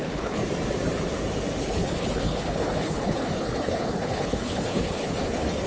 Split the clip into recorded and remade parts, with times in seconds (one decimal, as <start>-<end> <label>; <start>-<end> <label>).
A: 0.0-0.4 remade; 0.4-1.6 recorded; 1.6-5.7 remade